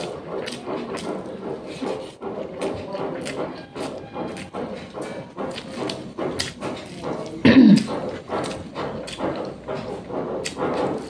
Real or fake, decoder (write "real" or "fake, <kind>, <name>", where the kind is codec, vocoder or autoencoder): real